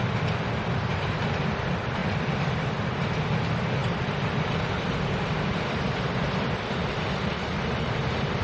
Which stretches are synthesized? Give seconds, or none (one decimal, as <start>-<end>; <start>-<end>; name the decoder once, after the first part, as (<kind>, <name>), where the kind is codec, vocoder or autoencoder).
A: 0.9-1.4 (vocoder, BigVGAN v2); 2.0-2.7; 3.8-8.4